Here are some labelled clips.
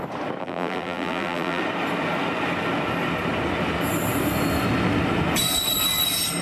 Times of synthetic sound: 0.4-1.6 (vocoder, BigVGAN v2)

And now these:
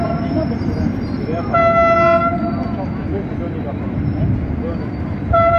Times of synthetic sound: 0.0-1.6 (vocoder, BigVGAN v2); 5.0-5.6

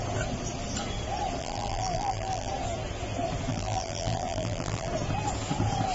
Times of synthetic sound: 1.4-2.5 (vocoder, BigVGAN v2); 3.5-4.9